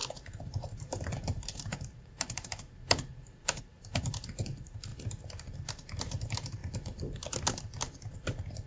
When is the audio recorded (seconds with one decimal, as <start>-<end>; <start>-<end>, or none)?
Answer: 4.9-6.0; 6.6-8.7